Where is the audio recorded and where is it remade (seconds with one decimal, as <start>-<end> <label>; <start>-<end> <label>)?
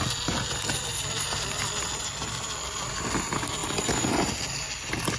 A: 0.0-5.2 recorded